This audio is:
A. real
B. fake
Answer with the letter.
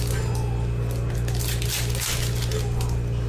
A